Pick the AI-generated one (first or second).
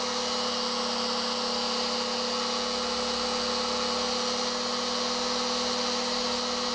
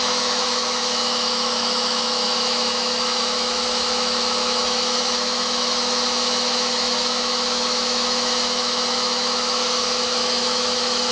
second